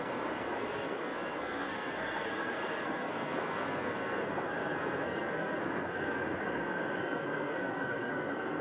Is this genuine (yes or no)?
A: no